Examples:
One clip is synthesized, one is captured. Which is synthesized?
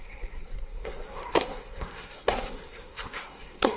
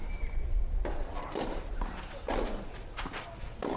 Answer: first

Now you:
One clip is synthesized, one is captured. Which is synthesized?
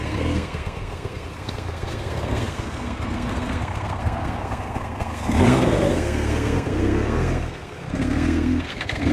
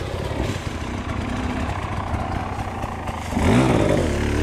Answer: first